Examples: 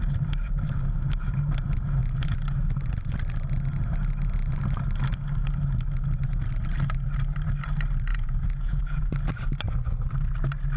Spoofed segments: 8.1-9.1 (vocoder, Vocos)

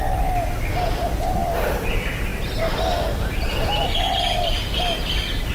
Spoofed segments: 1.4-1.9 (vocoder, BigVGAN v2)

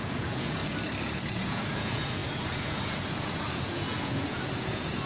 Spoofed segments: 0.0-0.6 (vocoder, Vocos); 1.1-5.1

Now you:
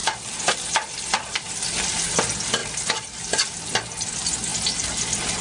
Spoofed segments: 0.0-2.2 (vocoder, BigVGAN v2); 2.6-3.6; 4.5-5.4

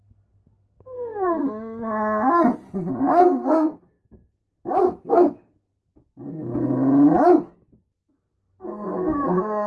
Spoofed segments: 0.0-1.4 (codec, SNAC); 3.0-4.4; 5.1-5.8; 8.5-9.7